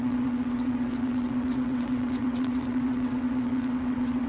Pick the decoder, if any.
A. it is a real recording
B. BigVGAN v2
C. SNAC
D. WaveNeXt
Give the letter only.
D